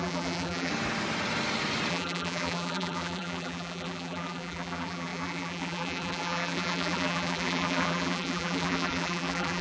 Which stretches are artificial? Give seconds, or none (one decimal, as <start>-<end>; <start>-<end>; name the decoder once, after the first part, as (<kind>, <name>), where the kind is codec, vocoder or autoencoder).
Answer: 0.0-0.7 (vocoder, BigVGAN v2); 1.9-9.6